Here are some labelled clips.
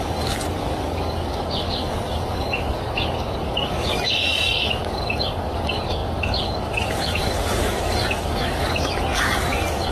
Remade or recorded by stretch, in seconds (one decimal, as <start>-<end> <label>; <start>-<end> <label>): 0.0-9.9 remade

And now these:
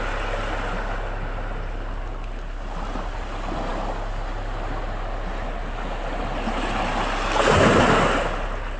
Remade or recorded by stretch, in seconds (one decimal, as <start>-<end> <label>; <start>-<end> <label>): 0.0-8.8 recorded

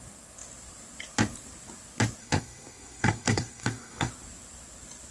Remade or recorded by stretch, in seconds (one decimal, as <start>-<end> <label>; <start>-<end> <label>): 0.0-2.2 recorded; 2.2-4.1 remade; 4.1-5.1 recorded